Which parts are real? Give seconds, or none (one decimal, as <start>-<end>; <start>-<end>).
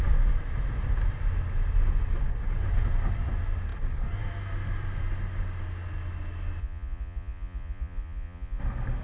0.0-6.6; 8.6-9.0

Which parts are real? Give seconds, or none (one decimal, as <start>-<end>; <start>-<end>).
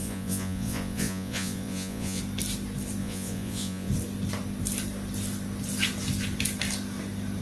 2.2-3.0; 3.9-7.4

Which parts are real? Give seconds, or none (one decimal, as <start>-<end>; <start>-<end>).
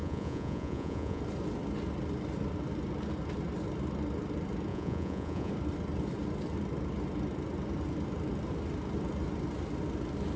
1.2-4.7; 5.5-10.4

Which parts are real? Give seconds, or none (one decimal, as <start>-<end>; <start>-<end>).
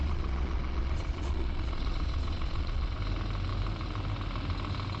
3.0-5.0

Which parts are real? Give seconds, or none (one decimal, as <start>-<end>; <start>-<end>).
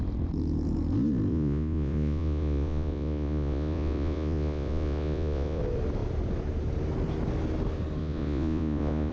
0.0-1.3; 5.6-8.0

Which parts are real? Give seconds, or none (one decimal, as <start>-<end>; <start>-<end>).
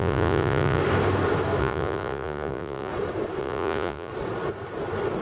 0.8-1.6; 2.9-3.4; 4.1-5.2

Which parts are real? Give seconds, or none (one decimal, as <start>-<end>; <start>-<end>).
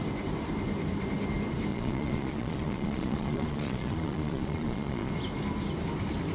0.0-1.7; 5.1-6.3